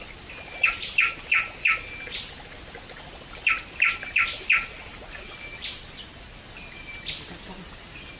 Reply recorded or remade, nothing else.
recorded